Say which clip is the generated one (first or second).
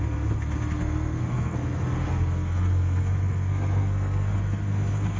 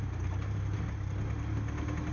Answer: first